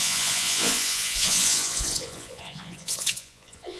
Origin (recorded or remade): remade